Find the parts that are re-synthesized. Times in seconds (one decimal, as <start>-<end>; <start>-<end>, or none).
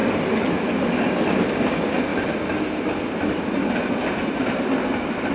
none